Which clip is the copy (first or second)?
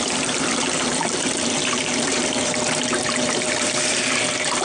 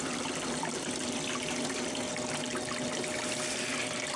first